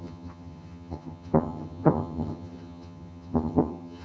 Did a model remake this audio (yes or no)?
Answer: yes